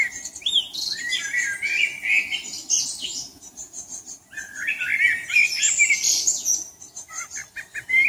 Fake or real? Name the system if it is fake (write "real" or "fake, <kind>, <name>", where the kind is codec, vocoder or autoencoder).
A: real